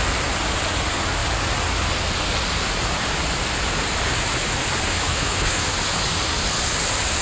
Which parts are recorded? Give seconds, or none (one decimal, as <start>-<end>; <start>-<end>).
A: 0.0-4.9; 5.6-7.2